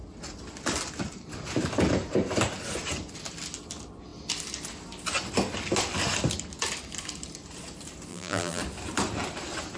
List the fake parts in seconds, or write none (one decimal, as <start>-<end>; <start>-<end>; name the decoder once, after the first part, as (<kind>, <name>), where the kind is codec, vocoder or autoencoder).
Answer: 8.1-8.6 (vocoder, BigVGAN v2)